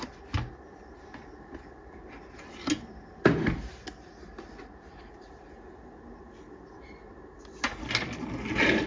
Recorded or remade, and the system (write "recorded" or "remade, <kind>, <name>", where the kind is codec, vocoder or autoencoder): recorded